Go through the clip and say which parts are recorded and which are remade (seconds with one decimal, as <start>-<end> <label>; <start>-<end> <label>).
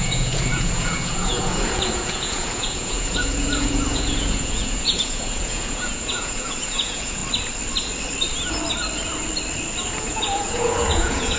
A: 0.0-7.2 remade; 7.2-10.0 recorded; 10.0-11.4 remade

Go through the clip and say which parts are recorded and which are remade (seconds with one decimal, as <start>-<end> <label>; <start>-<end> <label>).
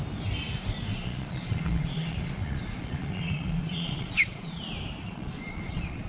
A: 0.0-0.9 recorded; 0.9-4.6 remade; 4.6-5.0 recorded; 5.0-6.1 remade